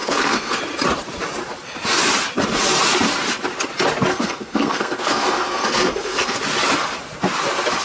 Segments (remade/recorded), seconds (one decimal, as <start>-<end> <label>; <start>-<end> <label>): 0.0-0.6 remade; 0.6-4.1 recorded; 4.1-6.4 remade; 6.4-7.8 recorded